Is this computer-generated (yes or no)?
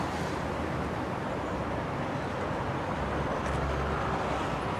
yes